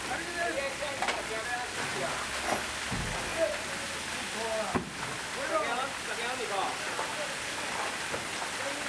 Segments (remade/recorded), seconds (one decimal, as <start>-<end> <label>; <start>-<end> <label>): 0.0-8.9 recorded